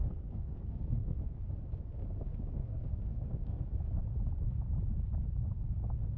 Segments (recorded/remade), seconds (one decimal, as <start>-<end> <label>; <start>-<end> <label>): 0.0-1.4 remade; 1.4-2.6 recorded; 2.6-3.6 remade; 3.6-6.2 recorded